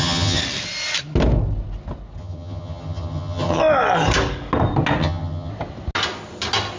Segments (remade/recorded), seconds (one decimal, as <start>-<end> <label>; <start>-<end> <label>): 0.0-0.4 remade; 0.4-2.2 recorded; 2.2-3.6 remade; 3.6-5.0 recorded; 5.0-5.5 remade; 5.5-6.8 recorded